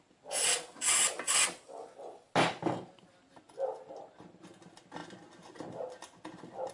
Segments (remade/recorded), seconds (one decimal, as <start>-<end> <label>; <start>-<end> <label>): 0.0-6.7 recorded